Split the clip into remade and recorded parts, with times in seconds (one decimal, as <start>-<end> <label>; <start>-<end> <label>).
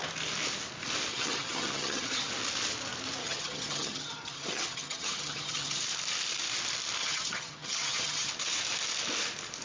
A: 0.0-1.1 recorded; 1.1-2.3 remade; 2.3-3.2 recorded; 3.2-5.8 remade; 5.8-7.0 recorded; 7.0-8.3 remade; 8.3-9.6 recorded